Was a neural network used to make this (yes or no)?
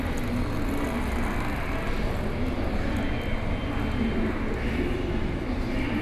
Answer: no